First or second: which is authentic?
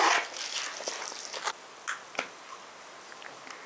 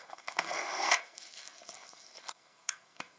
first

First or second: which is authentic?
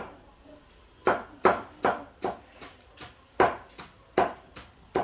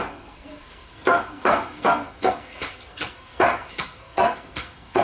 first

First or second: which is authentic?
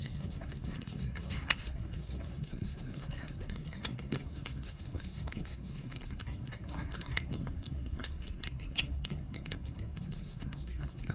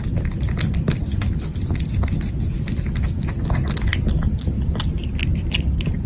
second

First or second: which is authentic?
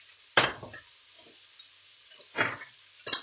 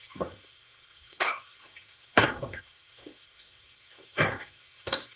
first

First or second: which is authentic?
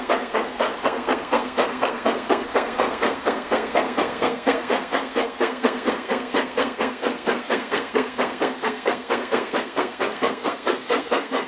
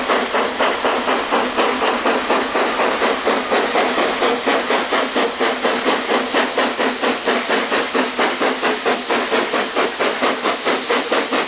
second